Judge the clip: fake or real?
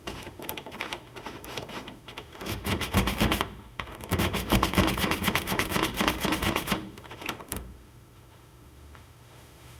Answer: fake